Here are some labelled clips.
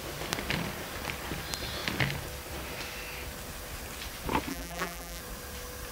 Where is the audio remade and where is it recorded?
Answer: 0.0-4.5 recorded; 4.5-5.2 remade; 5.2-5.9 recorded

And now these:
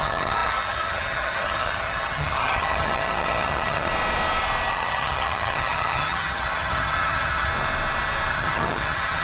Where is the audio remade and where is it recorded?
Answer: 0.0-3.9 remade; 3.9-4.7 recorded; 4.7-7.5 remade; 7.5-8.3 recorded; 8.3-9.2 remade

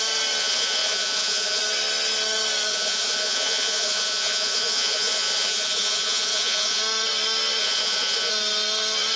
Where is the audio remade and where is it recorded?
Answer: 0.0-0.4 recorded; 0.4-1.6 remade; 1.6-2.7 recorded; 2.7-6.8 remade; 6.8-7.6 recorded; 7.6-8.3 remade; 8.3-9.2 recorded

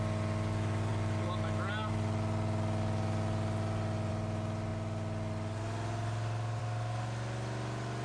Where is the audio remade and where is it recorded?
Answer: 0.0-8.0 recorded

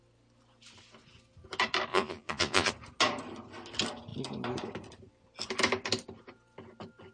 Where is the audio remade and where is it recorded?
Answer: 0.0-1.9 recorded; 1.9-2.7 remade; 2.7-7.1 recorded

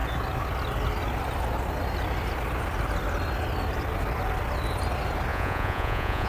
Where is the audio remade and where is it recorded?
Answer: 0.0-5.3 recorded; 5.3-6.3 remade

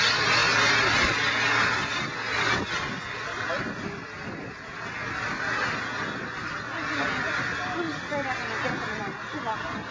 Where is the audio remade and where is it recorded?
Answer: 0.0-9.9 recorded